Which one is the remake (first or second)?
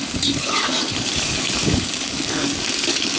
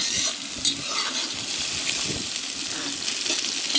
first